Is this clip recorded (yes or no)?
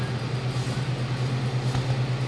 yes